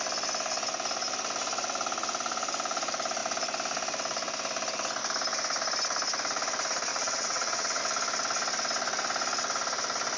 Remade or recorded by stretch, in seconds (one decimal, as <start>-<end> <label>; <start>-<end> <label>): 0.0-6.9 recorded; 6.9-7.8 remade; 7.8-10.2 recorded